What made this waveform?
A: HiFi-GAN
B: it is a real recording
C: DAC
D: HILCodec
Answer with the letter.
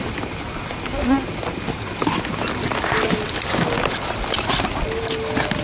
B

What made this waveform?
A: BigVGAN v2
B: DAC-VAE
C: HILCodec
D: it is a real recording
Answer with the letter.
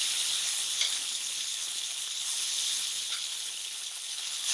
C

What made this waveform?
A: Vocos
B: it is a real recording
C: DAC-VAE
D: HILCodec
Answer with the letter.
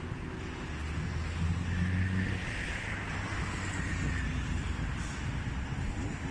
B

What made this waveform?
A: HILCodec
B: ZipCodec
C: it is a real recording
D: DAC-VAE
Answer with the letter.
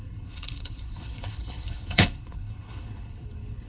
A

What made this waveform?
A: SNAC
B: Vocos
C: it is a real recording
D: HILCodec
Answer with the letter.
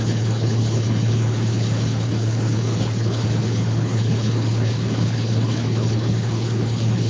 D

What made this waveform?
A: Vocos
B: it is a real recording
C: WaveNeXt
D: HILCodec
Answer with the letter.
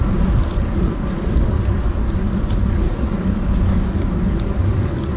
B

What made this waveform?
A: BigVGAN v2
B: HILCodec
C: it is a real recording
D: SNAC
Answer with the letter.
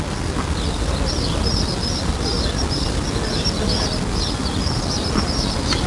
C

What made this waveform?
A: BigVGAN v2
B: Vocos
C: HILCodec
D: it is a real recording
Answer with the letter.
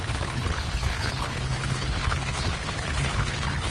C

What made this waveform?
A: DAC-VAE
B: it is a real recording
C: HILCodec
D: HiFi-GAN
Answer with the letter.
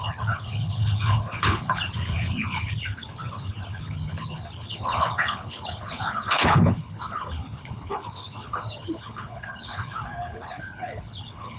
C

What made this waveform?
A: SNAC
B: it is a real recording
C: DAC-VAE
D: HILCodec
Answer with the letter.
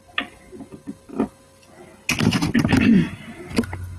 B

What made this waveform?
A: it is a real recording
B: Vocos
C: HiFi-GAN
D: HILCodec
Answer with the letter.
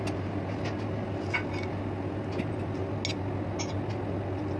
A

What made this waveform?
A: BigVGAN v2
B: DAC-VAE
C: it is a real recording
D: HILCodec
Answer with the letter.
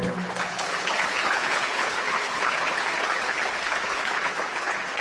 D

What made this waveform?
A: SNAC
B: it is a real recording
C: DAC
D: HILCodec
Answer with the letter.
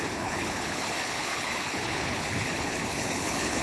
D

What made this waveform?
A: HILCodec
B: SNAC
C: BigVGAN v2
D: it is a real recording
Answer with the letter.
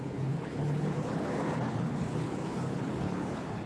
A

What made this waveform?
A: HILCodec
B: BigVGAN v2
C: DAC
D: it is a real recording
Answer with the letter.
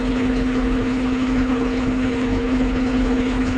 A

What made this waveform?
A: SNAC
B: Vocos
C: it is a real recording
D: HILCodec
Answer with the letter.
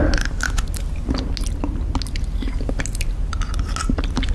C